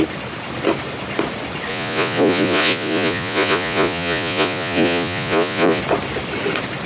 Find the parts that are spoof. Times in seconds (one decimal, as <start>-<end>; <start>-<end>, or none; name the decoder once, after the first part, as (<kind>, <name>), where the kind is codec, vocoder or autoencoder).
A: 1.7-5.8 (vocoder, Vocos)